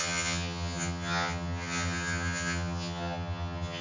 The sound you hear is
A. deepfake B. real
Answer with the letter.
A